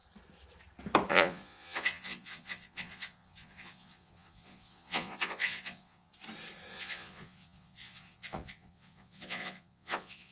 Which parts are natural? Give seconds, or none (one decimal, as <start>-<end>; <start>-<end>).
0.0-1.1; 6.1-6.7